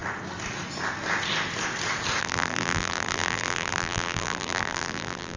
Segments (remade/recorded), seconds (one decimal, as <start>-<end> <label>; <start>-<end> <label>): 0.0-2.2 recorded; 2.2-5.4 remade